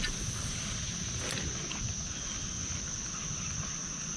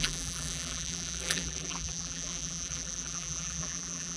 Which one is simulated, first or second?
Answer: second